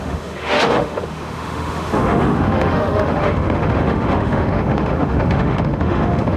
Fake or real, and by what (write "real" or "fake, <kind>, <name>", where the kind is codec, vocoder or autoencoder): fake, autoencoder, DAC-VAE